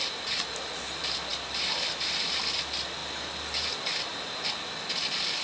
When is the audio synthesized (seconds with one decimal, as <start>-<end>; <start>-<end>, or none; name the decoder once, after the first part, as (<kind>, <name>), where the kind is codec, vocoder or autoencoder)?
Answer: 1.3-2.4 (vocoder, BigVGAN v2); 3.0-4.2